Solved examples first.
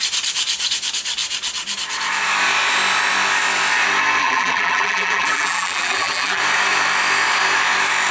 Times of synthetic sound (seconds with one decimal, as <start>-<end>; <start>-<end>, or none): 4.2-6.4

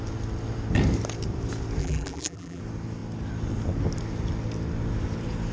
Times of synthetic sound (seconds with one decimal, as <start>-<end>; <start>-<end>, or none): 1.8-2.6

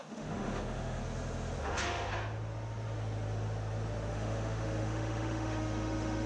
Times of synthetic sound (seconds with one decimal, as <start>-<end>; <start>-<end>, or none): 0.0-1.0; 1.6-2.1; 4.1-6.3

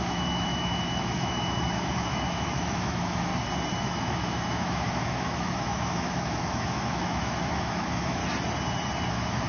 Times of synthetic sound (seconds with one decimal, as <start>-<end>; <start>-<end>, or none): 0.0-3.3; 3.8-8.2; 9.1-9.5

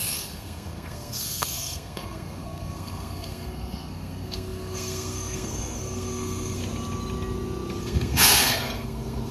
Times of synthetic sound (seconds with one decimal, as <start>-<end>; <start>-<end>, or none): 0.0-6.6; 7.8-9.3

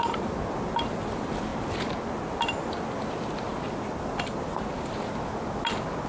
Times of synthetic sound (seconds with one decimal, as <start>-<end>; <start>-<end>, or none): none